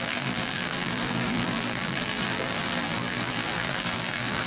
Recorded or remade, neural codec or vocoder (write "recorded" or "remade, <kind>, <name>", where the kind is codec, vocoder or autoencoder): remade, vocoder, BigVGAN v2